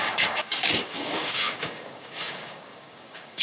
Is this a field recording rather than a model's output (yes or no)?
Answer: no